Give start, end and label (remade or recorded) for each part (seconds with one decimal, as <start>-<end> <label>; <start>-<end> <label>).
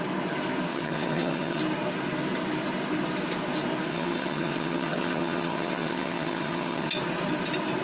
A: 0.0-0.7 recorded; 0.7-1.6 remade; 1.6-3.9 recorded; 3.9-6.9 remade; 6.9-7.8 recorded